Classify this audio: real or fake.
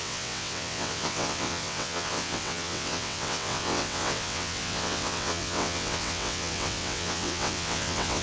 fake